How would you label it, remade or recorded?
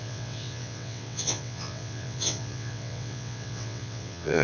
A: remade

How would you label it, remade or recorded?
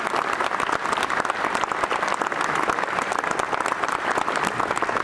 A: recorded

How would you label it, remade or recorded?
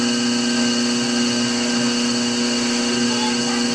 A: recorded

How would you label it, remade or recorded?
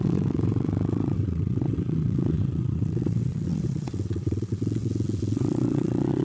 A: remade